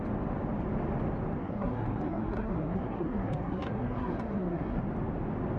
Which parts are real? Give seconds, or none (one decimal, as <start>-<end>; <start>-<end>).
0.0-1.4; 4.8-5.6